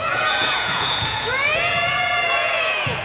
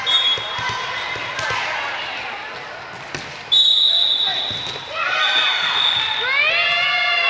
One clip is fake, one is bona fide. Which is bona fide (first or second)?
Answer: second